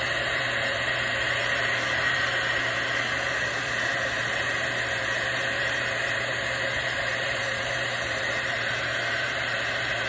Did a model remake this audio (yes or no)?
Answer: yes